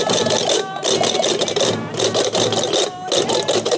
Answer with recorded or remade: recorded